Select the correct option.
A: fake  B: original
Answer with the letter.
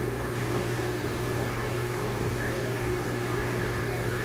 A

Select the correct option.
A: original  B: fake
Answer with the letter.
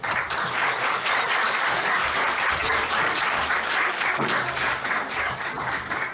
B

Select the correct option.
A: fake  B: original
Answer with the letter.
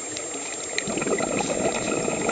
B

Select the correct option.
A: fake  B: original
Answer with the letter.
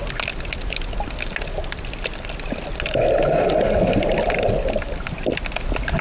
B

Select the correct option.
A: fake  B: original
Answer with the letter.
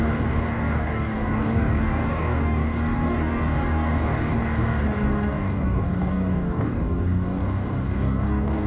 A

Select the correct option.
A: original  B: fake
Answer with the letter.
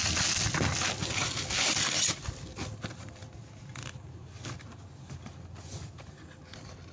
A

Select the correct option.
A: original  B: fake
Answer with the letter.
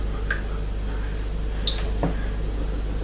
A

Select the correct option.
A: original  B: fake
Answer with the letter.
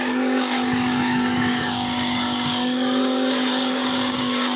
B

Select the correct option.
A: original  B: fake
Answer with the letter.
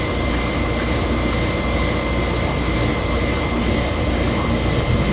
A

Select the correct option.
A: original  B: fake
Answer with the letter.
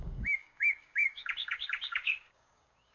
B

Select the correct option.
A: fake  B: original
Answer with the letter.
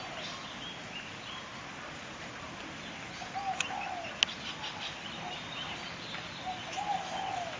B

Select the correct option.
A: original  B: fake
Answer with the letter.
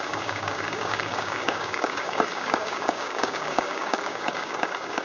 B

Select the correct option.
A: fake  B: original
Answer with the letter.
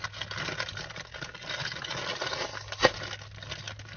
B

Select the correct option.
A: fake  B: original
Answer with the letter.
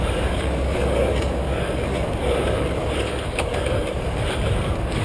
A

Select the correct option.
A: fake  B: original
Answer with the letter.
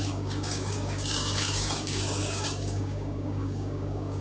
A